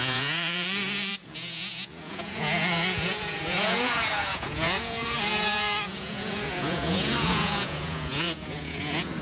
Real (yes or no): no